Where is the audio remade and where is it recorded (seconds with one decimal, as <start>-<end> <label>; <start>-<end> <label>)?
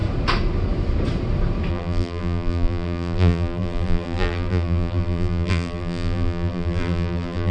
0.0-1.7 recorded; 1.7-7.5 remade